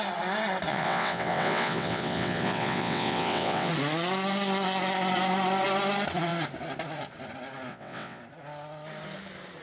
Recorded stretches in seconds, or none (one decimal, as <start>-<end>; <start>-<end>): 0.0-0.7; 3.7-7.7; 8.2-9.6